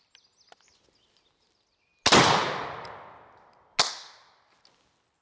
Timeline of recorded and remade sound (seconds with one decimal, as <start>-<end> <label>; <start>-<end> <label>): 0.0-5.2 recorded